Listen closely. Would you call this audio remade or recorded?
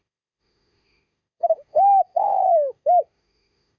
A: remade